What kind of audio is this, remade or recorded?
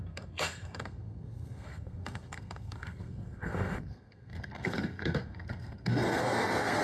remade